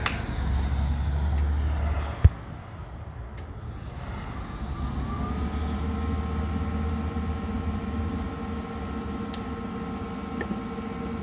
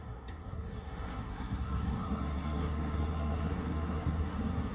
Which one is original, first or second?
first